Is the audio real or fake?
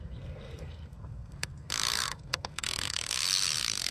fake